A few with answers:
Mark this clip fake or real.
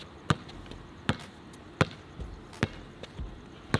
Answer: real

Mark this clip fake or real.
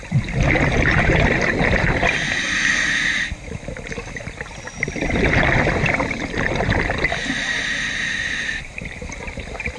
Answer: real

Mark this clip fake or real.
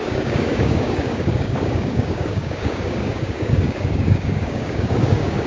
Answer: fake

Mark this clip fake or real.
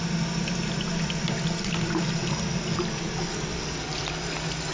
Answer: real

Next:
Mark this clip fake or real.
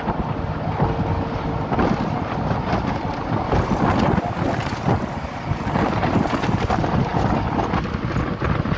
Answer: real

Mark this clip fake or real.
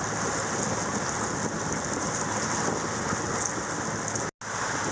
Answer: real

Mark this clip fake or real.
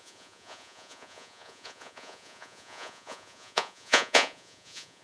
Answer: fake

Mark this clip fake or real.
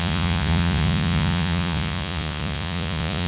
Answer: fake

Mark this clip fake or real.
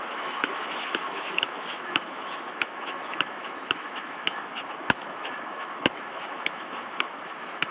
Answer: fake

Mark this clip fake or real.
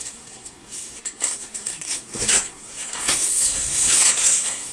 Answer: fake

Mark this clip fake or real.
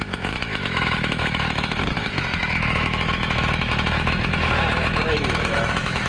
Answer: fake